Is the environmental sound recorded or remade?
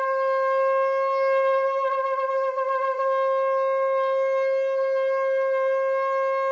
recorded